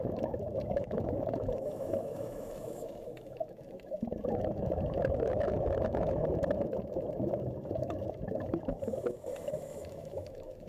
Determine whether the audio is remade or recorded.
remade